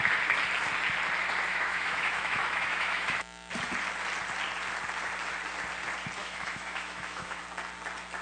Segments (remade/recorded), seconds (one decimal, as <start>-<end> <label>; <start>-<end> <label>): 0.0-1.5 recorded; 1.5-3.5 remade; 3.5-6.2 recorded; 6.2-7.4 remade; 7.4-8.2 recorded